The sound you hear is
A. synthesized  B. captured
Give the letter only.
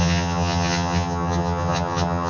A